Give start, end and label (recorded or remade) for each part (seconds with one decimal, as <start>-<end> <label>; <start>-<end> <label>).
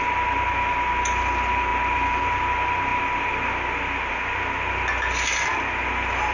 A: 0.0-6.3 recorded